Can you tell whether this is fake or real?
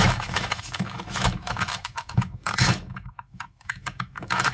fake